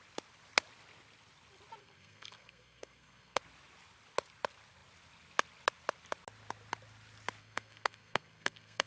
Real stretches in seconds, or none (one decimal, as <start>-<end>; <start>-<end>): 0.0-1.8; 3.4-7.4